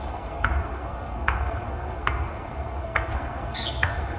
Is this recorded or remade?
remade